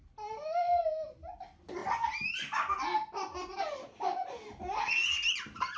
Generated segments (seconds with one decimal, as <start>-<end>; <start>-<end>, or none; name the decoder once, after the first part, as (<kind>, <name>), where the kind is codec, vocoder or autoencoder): 0.0-1.8 (vocoder, BigVGAN v2); 5.3-5.8